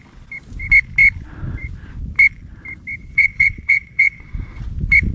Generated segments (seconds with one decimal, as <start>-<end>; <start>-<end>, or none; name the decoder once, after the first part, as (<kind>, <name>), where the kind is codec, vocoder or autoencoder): 3.0-4.6 (vocoder, WaveNeXt)